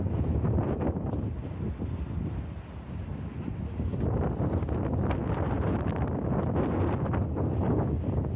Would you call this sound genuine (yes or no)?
yes